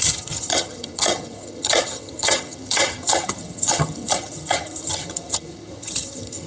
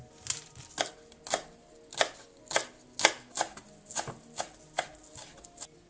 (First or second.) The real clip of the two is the second